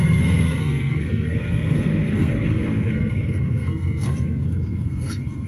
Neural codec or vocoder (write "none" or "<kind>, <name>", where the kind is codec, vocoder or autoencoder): codec, SNAC